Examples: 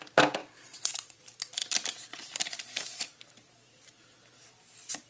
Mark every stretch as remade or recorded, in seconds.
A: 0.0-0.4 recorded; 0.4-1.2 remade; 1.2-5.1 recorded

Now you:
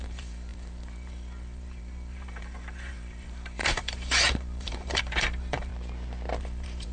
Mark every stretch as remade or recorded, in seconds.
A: 0.0-5.7 remade; 5.7-6.4 recorded; 6.4-6.9 remade

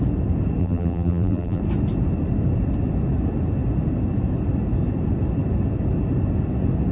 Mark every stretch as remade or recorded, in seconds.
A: 0.0-0.6 recorded; 0.6-1.6 remade; 1.6-6.9 recorded

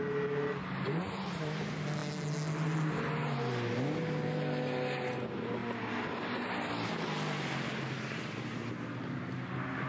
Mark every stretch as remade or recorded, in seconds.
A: 0.0-9.9 recorded

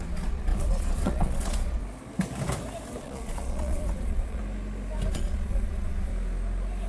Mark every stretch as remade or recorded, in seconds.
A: 0.0-1.8 remade; 1.8-3.0 recorded; 3.0-4.4 remade; 4.4-5.1 recorded; 5.1-6.1 remade; 6.1-6.9 recorded